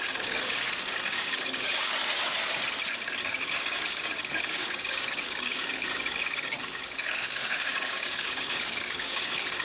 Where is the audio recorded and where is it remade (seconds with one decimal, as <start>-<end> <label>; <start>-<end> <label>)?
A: 0.0-2.0 remade; 2.0-3.2 recorded; 3.2-9.6 remade